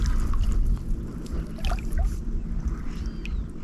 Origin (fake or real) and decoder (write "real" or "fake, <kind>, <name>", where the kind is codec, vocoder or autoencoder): real